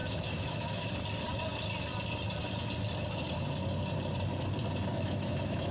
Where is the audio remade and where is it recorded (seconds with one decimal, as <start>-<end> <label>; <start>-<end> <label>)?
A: 0.0-0.9 remade; 0.9-4.9 recorded; 4.9-5.7 remade